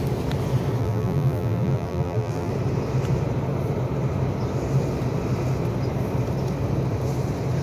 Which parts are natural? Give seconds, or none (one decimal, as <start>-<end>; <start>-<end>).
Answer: 0.0-0.8; 2.5-7.6